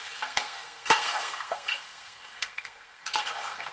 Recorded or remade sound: remade